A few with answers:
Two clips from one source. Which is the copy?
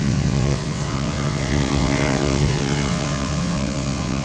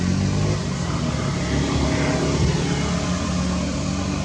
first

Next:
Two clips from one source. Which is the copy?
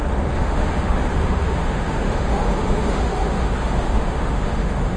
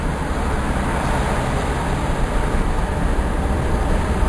first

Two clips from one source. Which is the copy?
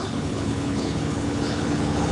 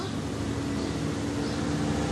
first